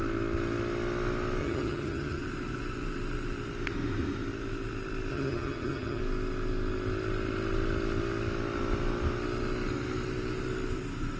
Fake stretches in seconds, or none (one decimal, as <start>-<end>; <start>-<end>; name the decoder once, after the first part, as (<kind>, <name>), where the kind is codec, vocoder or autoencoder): 1.4-2.2 (vocoder, HiFi-GAN); 5.1-6.0